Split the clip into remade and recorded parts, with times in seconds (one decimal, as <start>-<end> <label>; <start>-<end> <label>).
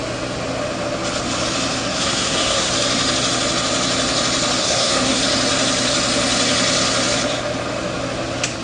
0.0-1.9 recorded; 1.9-2.7 remade; 2.7-4.6 recorded; 4.6-5.2 remade; 5.2-8.6 recorded